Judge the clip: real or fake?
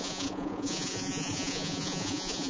fake